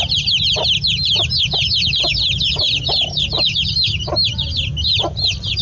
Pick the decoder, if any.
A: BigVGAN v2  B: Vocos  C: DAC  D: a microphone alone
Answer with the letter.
D